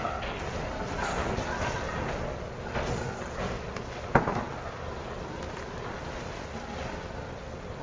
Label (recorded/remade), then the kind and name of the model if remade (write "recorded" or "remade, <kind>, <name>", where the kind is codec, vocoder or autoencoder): recorded